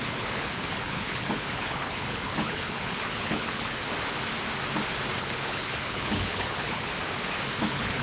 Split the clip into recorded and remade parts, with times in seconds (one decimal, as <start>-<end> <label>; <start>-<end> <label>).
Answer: 0.0-3.8 remade; 3.8-5.2 recorded; 5.2-6.9 remade; 6.9-7.6 recorded; 7.6-8.0 remade